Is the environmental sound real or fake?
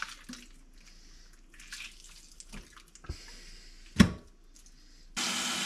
real